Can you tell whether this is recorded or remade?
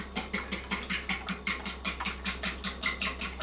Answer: recorded